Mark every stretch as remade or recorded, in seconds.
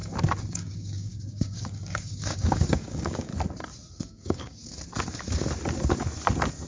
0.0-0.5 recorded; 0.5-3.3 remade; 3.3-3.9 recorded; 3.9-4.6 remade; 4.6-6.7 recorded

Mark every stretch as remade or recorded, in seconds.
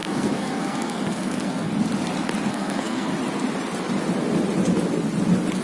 0.0-1.7 remade; 1.7-2.5 recorded; 2.5-3.1 remade; 3.1-5.6 recorded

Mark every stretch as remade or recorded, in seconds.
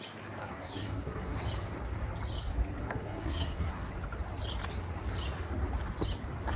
0.0-0.4 recorded; 0.4-1.4 remade; 1.4-2.8 recorded; 2.8-3.9 remade; 3.9-6.6 recorded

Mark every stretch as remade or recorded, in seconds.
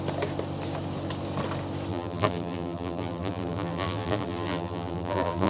0.0-1.9 recorded; 1.9-5.5 remade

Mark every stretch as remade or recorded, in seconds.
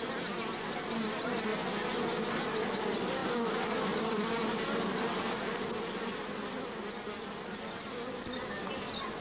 0.0-9.2 recorded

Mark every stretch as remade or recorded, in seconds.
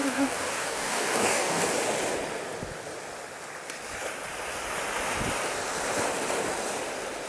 0.0-1.6 remade; 1.6-7.3 recorded